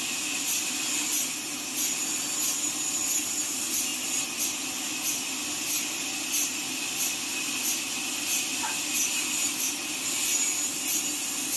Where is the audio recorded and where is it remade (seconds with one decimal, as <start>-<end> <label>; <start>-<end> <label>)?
0.0-11.6 recorded